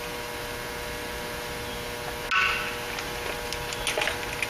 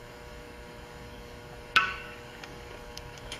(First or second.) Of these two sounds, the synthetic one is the second